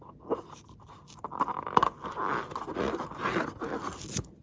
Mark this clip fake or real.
real